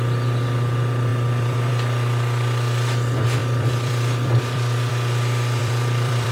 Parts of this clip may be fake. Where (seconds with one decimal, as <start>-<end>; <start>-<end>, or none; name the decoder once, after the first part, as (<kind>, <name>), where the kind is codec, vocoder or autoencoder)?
1.1-1.7 (vocoder, BigVGAN v2); 3.4-4.9; 5.6-6.3